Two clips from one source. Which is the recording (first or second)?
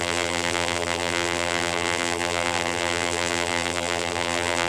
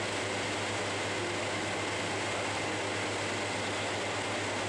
second